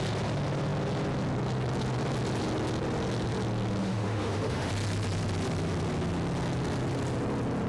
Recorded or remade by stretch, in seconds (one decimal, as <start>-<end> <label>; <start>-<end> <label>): 0.0-3.8 recorded; 3.8-4.7 remade; 4.7-7.7 recorded